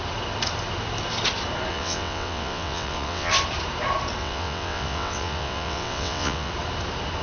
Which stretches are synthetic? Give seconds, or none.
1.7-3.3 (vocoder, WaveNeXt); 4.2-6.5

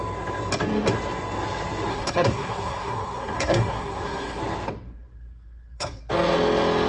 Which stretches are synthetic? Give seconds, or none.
1.9-4.4 (codec, SNAC); 4.9-6.0

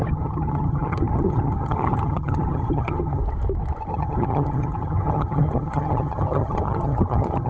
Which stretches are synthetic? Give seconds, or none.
0.0-3.2 (vocoder, HiFi-GAN); 3.9-7.5

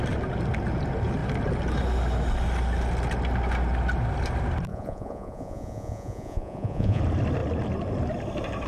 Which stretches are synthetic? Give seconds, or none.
4.7-7.0 (vocoder, Vocos)

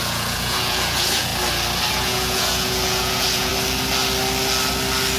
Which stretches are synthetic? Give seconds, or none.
0.0-1.3 (vocoder, Vocos); 1.9-3.5

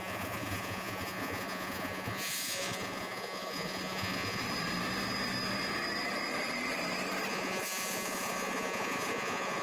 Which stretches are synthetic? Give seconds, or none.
0.0-4.4 (vocoder, Vocos); 7.3-9.6

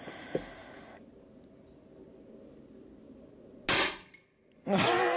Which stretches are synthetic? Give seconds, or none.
none